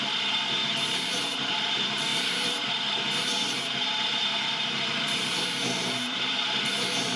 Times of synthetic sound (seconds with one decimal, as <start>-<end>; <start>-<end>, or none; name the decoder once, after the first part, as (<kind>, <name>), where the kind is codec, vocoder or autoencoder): 0.0-7.2 (vocoder, BigVGAN v2)